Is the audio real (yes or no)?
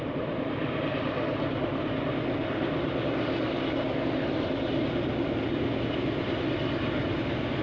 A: yes